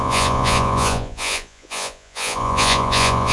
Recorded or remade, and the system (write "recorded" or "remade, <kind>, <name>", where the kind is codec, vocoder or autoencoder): remade, vocoder, Vocos